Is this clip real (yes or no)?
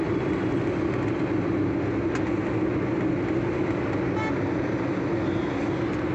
yes